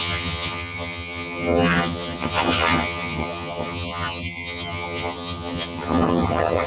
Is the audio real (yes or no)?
no